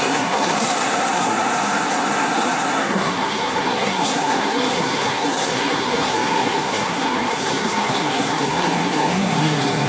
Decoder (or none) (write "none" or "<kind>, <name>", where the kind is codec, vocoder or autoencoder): codec, SNAC